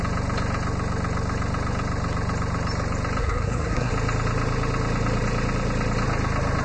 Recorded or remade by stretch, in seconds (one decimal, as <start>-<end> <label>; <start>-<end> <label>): 0.0-3.2 recorded; 3.2-3.9 remade; 3.9-6.6 recorded